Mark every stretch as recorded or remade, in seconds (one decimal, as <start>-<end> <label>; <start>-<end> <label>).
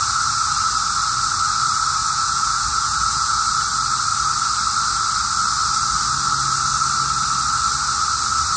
0.0-2.0 recorded; 2.0-3.4 remade; 3.4-8.6 recorded